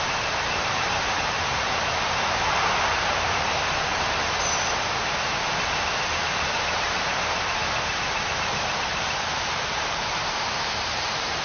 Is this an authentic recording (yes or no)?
no